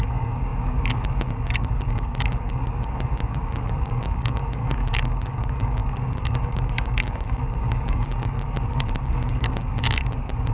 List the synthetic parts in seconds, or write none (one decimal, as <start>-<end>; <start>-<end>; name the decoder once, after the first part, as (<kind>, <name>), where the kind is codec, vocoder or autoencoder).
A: 0.0-10.5 (codec, DAC)